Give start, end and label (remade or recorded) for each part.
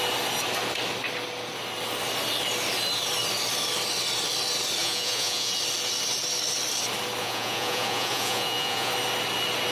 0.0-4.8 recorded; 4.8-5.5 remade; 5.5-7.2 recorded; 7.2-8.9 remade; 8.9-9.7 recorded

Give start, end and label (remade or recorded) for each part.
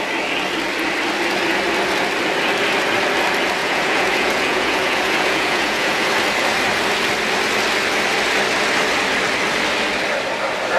0.0-3.6 recorded; 3.6-6.1 remade; 6.1-10.8 recorded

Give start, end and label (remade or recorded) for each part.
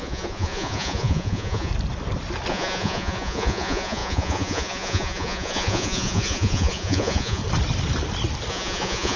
0.0-1.7 remade; 1.7-2.5 recorded; 2.5-7.4 remade; 7.4-8.5 recorded; 8.5-9.2 remade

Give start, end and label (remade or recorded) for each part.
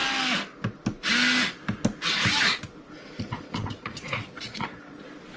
0.0-3.2 recorded; 3.2-5.4 remade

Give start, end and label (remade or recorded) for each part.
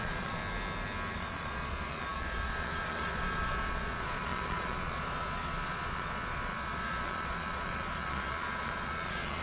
0.0-0.4 remade; 0.4-1.1 recorded; 1.1-9.4 remade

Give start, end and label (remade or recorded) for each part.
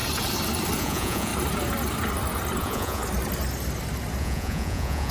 0.0-0.8 recorded; 0.8-1.3 remade; 1.3-2.6 recorded; 2.6-3.0 remade; 3.0-4.2 recorded; 4.2-5.1 remade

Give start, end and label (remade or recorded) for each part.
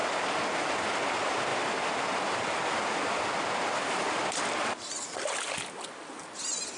0.0-6.8 recorded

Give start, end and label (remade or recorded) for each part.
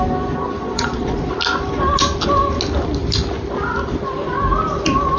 0.0-0.6 recorded; 0.6-1.3 remade; 1.3-5.2 recorded